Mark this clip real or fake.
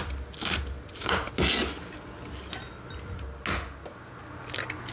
real